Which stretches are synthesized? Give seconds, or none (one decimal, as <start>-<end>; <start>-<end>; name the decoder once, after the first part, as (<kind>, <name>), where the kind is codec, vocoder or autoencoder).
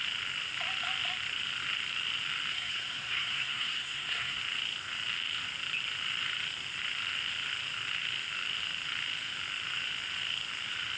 2.5-4.4 (codec, SNAC)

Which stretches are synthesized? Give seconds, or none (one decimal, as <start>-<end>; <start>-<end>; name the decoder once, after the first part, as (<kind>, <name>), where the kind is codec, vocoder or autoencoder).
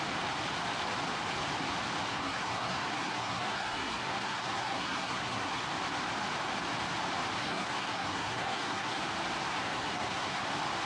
2.1-5.6 (codec, SNAC); 7.4-9.0; 9.5-10.4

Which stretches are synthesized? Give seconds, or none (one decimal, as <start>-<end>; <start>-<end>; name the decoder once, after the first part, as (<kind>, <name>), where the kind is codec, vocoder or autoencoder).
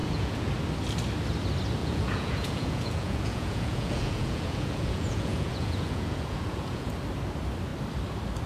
0.0-0.5 (vocoder, Vocos); 1.8-6.9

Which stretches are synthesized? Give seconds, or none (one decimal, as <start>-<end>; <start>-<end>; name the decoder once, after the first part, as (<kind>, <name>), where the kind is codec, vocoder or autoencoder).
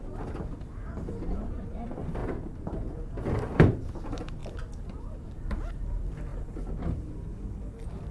0.0-2.2 (vocoder, BigVGAN v2); 2.9-4.4; 5.0-8.1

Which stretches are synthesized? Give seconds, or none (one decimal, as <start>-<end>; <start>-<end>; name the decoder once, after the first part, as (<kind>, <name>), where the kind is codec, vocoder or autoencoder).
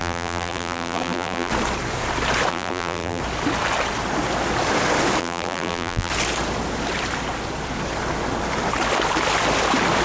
0.0-1.5 (vocoder, BigVGAN v2); 2.5-3.2; 5.2-6.1